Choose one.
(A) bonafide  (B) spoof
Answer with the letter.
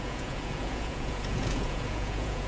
B